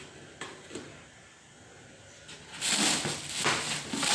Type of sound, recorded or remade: recorded